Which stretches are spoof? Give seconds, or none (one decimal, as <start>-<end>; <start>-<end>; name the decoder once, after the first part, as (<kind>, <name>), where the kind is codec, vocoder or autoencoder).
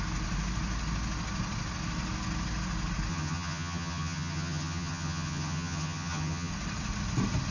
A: 3.1-6.5 (vocoder, HiFi-GAN)